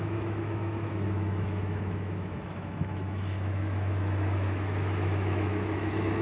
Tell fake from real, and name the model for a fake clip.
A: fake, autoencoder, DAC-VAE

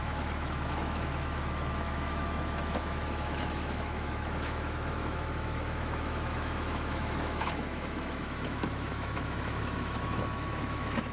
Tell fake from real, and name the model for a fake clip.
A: fake, autoencoder, DAC-VAE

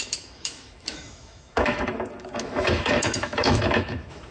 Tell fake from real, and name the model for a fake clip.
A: fake, autoencoder, DAC-VAE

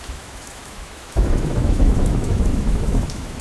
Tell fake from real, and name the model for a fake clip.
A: fake, autoencoder, DAC-VAE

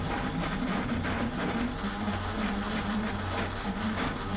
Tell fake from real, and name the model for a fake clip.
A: real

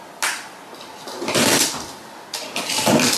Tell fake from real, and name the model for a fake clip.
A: real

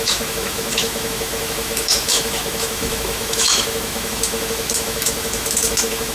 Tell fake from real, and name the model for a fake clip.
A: fake, autoencoder, DAC-VAE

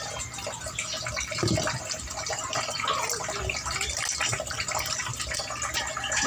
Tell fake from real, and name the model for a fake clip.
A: real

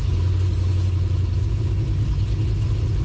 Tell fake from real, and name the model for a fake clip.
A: real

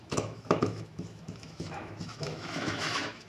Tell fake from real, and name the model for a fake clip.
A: fake, autoencoder, DAC-VAE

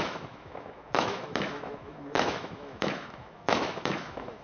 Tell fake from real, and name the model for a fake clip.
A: fake, autoencoder, DAC-VAE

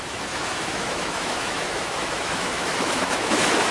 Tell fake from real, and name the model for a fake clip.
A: fake, autoencoder, DAC-VAE